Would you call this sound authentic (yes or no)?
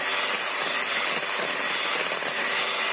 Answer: yes